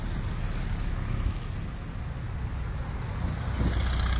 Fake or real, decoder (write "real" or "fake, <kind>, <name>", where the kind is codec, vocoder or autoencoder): real